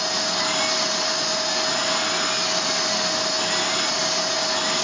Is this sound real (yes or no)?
yes